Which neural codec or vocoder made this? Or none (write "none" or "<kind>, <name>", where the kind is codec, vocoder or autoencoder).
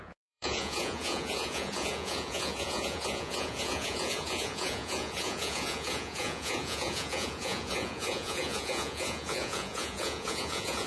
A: vocoder, Vocos